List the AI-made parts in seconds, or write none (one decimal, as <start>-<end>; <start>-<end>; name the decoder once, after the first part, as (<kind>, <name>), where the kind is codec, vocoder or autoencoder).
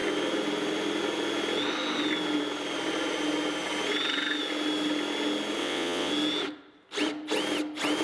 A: 5.6-6.1 (vocoder, WaveNeXt)